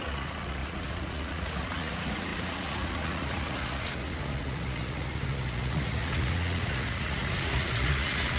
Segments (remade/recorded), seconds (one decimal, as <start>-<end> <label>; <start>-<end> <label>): 0.0-8.4 remade